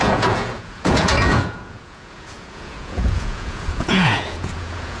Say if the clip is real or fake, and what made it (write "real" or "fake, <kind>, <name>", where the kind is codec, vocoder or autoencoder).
fake, vocoder, Vocos